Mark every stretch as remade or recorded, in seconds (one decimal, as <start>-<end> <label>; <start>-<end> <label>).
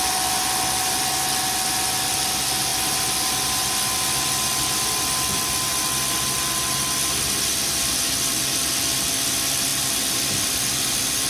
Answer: 0.0-11.3 recorded